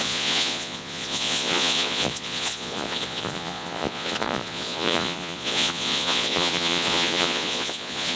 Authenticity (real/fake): fake